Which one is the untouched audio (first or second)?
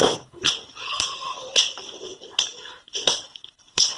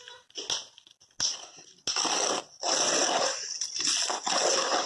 second